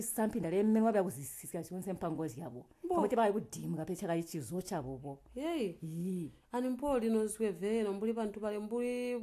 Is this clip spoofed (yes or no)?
no